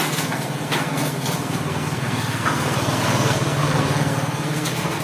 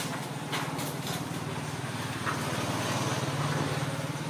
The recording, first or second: second